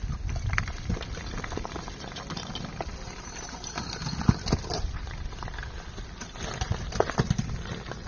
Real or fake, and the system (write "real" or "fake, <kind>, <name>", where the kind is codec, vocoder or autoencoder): real